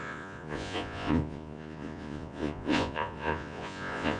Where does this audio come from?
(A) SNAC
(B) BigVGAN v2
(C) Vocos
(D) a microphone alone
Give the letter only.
C